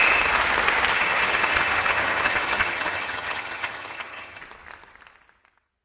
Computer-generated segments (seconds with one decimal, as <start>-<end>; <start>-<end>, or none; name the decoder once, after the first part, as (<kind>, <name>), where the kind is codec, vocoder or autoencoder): 0.9-4.4 (vocoder, HiFi-GAN)